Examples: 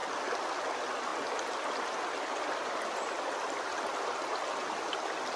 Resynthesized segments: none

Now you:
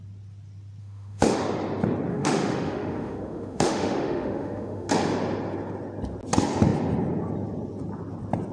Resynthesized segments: 0.8-1.4; 2.1-4.9

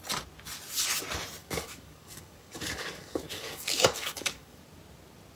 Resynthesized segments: 1.4-4.6

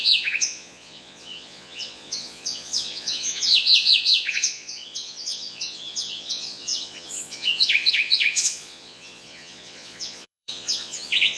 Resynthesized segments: 0.0-11.4

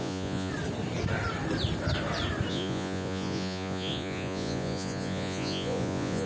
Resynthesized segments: 0.0-0.5; 2.5-6.3

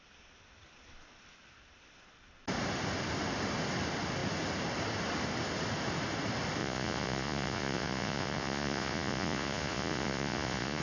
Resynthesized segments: 6.6-10.8